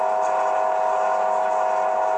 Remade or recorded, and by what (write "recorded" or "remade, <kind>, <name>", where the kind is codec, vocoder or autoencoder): recorded